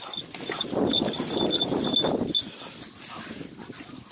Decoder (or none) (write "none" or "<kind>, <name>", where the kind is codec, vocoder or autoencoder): none